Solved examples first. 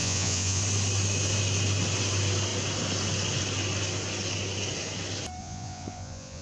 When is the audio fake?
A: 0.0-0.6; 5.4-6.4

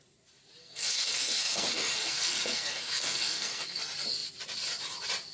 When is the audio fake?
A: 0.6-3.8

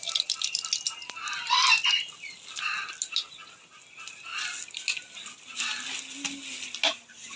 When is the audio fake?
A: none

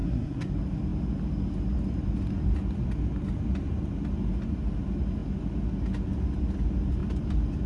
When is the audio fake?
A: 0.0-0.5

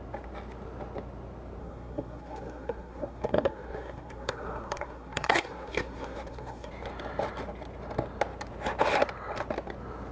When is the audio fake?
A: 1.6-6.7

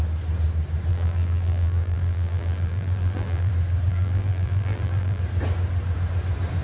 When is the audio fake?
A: 0.9-3.5; 3.9-5.2